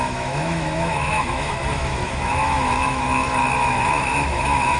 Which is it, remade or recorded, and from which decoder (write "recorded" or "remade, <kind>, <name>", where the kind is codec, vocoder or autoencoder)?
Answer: remade, autoencoder, DAC-VAE